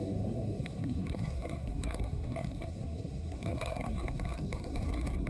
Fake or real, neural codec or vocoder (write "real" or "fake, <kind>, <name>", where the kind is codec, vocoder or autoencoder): fake, codec, SNAC